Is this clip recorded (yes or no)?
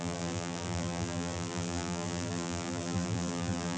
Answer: no